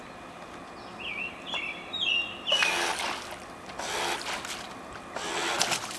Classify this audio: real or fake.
real